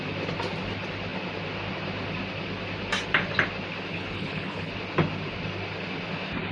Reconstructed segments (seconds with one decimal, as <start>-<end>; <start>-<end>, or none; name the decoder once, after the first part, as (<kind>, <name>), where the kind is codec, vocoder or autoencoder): 3.9-4.7 (codec, HILCodec)